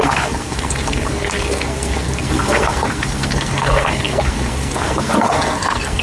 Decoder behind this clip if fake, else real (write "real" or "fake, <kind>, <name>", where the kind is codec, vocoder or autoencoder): fake, codec, SNAC